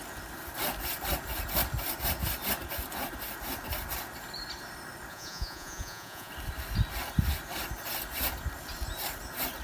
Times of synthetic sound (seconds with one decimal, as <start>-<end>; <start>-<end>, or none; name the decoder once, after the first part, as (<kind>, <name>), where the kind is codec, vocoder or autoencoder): 5.1-6.3 (vocoder, Vocos)